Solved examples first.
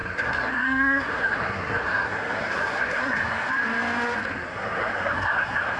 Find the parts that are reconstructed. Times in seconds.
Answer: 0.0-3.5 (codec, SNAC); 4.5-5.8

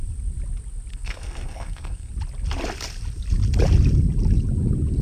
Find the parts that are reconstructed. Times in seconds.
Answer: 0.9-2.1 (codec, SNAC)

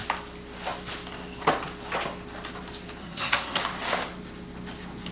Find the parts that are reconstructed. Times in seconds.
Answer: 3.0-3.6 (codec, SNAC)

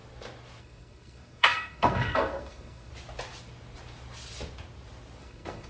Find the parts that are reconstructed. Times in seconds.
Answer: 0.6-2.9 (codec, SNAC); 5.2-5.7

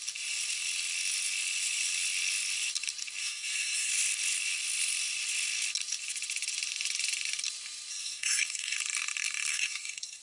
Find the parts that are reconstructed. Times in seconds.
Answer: 3.2-3.9 (codec, SNAC); 7.9-8.8; 9.5-10.2

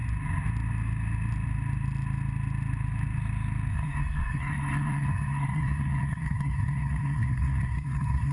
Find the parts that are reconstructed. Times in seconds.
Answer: 3.7-8.3 (codec, SNAC)